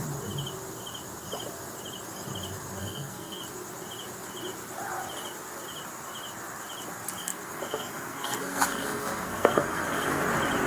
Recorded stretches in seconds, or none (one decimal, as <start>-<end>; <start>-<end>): 0.0-2.8; 3.4-7.2; 10.2-10.7